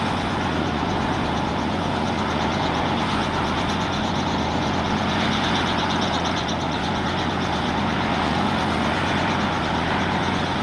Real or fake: fake